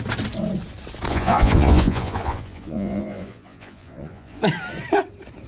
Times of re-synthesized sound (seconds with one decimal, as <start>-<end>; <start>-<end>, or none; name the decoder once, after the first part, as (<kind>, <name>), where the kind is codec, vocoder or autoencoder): 1.1-4.4 (vocoder, Vocos)